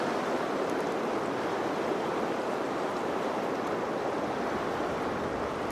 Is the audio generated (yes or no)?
no